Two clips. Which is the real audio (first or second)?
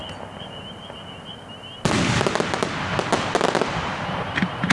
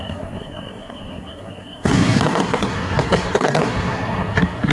first